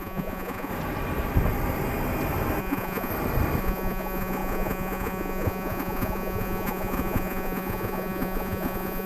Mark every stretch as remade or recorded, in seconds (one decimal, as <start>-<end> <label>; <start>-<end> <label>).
0.0-0.7 remade; 0.7-2.6 recorded; 2.6-3.1 remade; 3.1-3.6 recorded; 3.6-9.1 remade